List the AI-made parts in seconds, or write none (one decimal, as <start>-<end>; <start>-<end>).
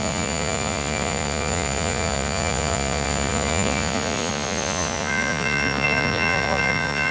0.0-7.1